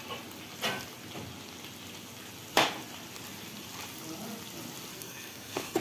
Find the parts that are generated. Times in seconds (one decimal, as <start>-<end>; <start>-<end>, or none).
4.9-5.8